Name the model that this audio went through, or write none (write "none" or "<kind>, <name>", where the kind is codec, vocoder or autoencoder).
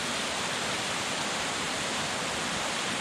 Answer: none